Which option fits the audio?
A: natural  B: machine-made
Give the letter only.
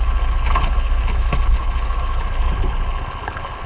B